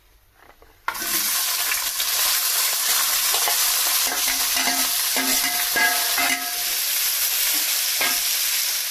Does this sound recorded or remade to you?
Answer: recorded